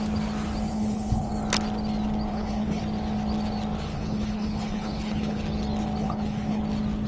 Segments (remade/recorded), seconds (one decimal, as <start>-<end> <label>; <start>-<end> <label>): 0.0-0.7 recorded; 0.7-1.3 remade; 1.3-2.3 recorded; 2.3-2.8 remade; 2.8-3.9 recorded; 3.9-5.4 remade; 5.4-6.0 recorded; 6.0-6.6 remade; 6.6-7.1 recorded